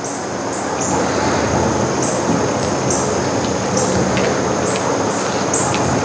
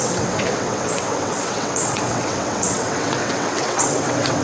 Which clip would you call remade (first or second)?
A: second